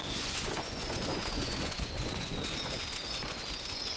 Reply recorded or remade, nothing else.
remade